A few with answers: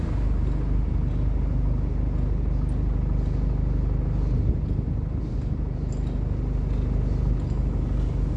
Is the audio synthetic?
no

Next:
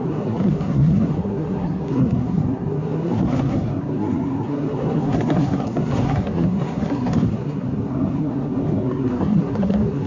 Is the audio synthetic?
yes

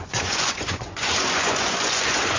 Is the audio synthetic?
yes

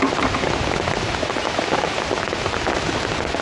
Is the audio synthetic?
no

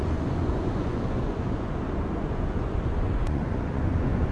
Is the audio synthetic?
yes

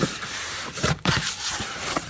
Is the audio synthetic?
yes